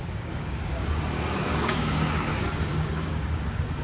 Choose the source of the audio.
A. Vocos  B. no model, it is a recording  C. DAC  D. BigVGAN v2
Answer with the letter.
C